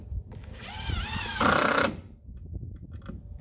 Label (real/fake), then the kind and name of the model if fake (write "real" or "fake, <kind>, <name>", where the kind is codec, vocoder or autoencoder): real